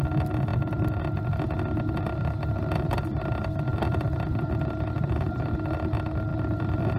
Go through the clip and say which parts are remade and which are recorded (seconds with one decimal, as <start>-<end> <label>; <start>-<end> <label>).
0.0-3.7 recorded; 3.7-5.4 remade; 5.4-6.3 recorded; 6.3-7.0 remade